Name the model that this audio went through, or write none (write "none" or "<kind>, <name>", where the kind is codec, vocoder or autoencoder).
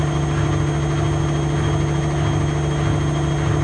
none